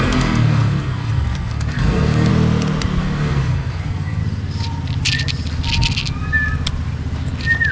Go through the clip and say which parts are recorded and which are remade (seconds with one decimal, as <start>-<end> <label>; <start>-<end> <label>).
0.0-2.3 remade; 2.3-3.0 recorded; 3.0-4.2 remade; 4.2-7.7 recorded